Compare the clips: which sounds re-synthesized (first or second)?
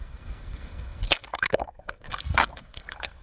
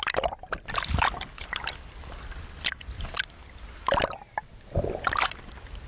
first